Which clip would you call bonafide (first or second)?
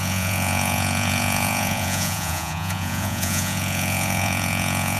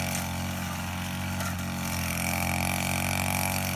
second